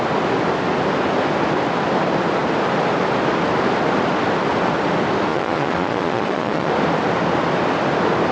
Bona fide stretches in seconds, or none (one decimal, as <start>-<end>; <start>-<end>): 0.0-5.3; 6.7-8.3